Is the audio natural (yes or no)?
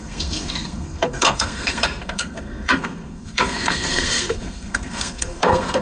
no